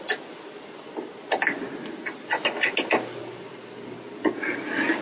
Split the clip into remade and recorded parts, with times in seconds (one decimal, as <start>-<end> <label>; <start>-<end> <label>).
0.0-5.0 recorded